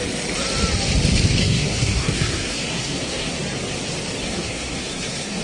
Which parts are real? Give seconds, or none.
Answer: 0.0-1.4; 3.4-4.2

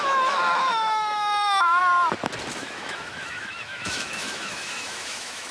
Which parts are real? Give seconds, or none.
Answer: 1.8-2.6